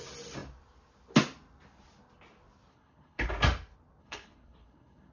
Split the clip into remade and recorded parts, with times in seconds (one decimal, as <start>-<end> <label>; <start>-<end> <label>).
0.0-2.7 recorded; 2.7-3.3 remade; 3.3-4.0 recorded; 4.0-5.1 remade